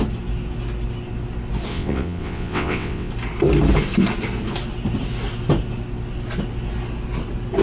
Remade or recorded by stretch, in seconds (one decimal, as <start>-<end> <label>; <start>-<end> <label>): 0.0-1.7 recorded; 1.7-3.1 remade; 3.1-7.6 recorded